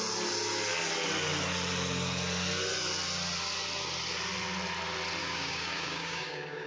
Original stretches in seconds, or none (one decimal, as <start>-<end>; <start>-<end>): 0.0-5.2